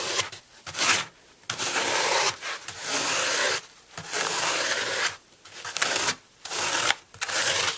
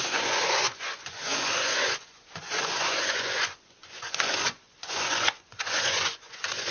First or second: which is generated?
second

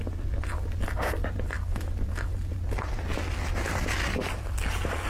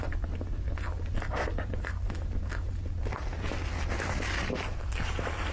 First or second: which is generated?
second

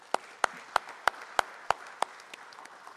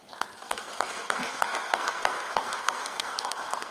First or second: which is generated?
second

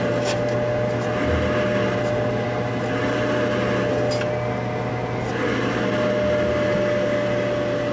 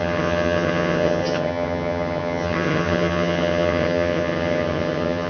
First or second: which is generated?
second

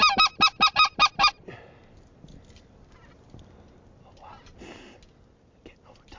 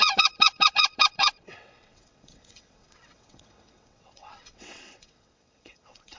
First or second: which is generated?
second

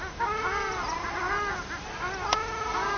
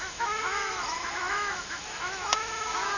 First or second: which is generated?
second